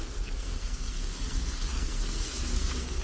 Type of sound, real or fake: fake